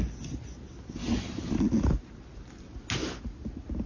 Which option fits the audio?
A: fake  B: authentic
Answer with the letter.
B